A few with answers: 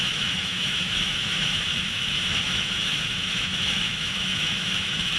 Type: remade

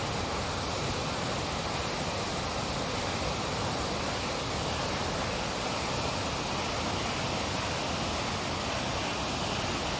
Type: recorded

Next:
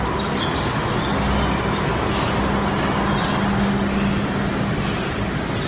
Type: recorded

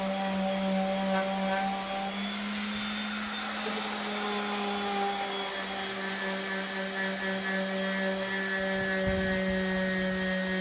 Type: recorded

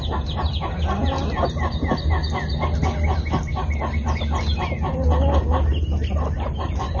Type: recorded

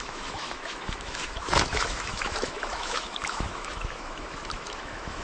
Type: remade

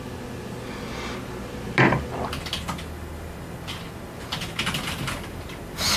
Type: recorded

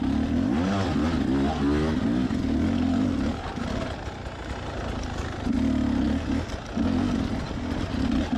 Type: recorded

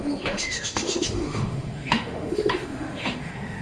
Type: remade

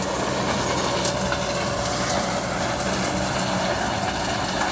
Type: recorded